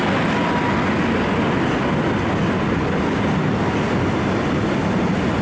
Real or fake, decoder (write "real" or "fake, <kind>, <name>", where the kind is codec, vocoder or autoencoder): real